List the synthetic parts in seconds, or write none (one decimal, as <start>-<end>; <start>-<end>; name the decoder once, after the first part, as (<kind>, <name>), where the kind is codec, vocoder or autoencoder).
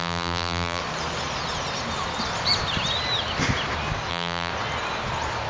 0.0-0.8 (vocoder, BigVGAN v2); 4.1-4.5